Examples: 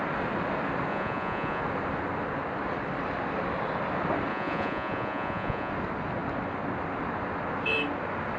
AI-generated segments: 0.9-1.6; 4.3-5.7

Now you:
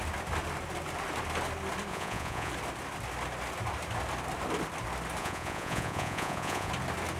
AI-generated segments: 1.9-2.5; 5.2-6.7

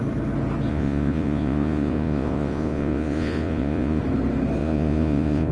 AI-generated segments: 0.7-4.0; 4.6-5.5